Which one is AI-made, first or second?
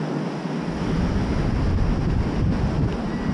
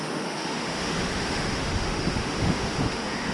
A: second